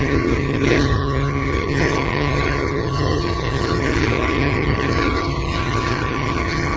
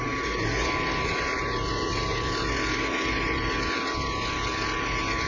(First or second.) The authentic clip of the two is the second